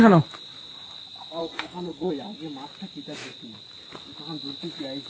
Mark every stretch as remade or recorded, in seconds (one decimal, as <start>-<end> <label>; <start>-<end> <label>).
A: 0.0-1.4 recorded; 1.4-2.1 remade; 2.1-5.1 recorded